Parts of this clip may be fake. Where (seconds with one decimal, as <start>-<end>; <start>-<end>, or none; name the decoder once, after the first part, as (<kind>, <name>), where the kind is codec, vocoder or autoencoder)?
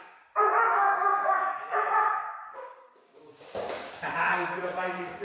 0.0-5.2 (codec, DAC)